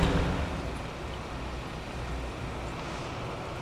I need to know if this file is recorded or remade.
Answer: recorded